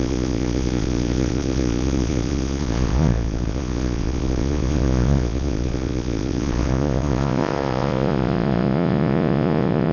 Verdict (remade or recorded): remade